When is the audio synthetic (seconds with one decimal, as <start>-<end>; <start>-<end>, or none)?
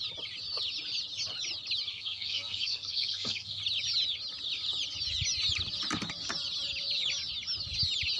1.9-3.6